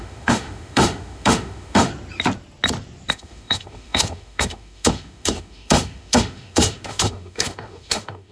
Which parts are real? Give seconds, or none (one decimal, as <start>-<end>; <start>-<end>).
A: 1.9-3.1